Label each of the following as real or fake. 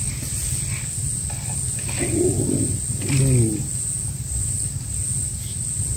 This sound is real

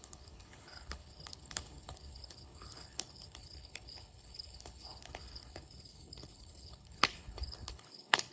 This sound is fake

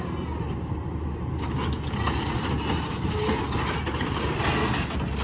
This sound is real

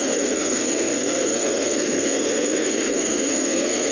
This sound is fake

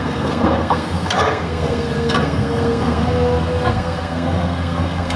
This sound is fake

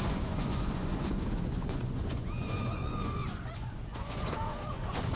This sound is fake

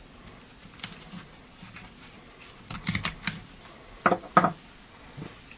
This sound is real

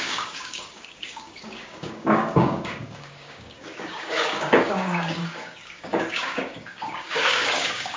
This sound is fake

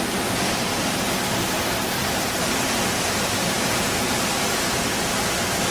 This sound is real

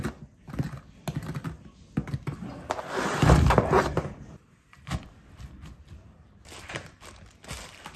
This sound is real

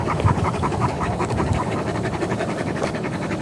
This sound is fake